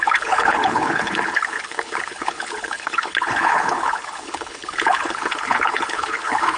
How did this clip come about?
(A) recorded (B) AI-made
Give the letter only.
B